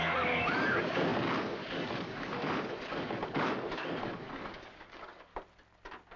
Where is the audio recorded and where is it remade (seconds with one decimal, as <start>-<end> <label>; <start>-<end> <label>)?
0.0-5.3 remade; 5.3-6.2 recorded